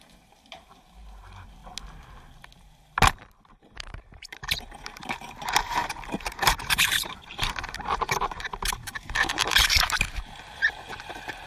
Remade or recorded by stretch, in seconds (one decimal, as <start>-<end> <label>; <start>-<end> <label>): 0.0-1.6 remade; 1.6-3.5 recorded; 3.5-11.5 remade